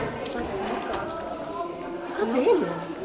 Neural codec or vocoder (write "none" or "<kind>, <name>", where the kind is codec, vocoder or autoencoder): none